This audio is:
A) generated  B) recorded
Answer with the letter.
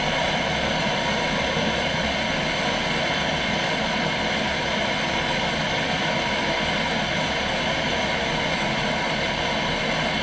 B